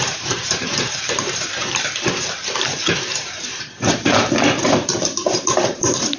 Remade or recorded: remade